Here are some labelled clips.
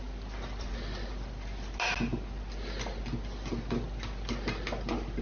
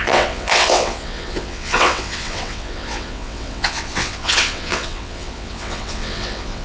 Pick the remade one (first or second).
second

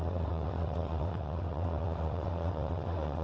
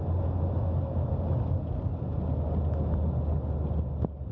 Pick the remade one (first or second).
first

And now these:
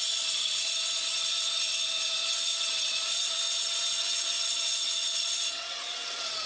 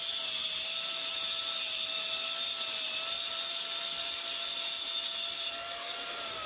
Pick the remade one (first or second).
first